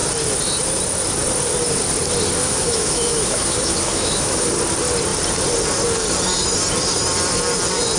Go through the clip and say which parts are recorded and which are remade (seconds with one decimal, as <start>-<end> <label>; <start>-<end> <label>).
0.0-2.4 recorded; 2.4-4.5 remade; 4.5-8.0 recorded